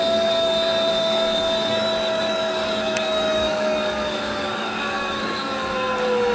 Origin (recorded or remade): remade